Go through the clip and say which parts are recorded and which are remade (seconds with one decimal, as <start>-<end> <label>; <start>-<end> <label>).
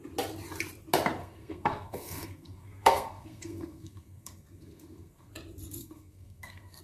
0.0-1.2 recorded; 1.2-5.3 remade; 5.3-5.8 recorded; 5.8-6.8 remade